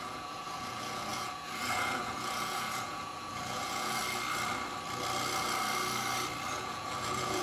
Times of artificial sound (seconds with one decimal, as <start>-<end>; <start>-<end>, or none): 0.0-4.0; 6.5-7.4